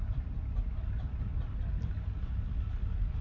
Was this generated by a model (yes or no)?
no